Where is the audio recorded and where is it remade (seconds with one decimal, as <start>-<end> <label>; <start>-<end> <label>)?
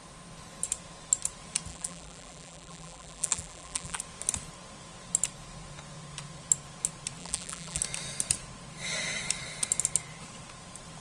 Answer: 0.0-1.7 recorded; 1.7-4.0 remade; 4.0-7.2 recorded; 7.2-7.8 remade; 7.8-11.0 recorded